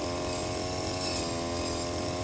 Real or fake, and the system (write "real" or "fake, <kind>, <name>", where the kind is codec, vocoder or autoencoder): real